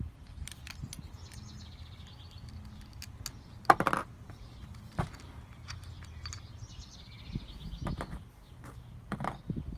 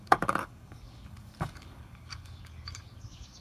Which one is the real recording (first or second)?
first